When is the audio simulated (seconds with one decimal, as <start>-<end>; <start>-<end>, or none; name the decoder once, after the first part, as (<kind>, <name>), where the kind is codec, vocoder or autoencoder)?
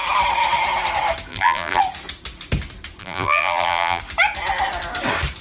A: 1.3-1.8 (vocoder, BigVGAN v2); 3.0-4.0